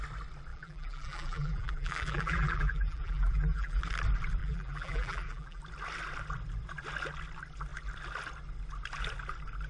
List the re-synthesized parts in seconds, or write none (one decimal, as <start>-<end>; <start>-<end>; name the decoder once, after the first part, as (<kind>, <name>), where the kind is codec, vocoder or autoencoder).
0.5-3.8 (vocoder, BigVGAN v2); 4.4-5.6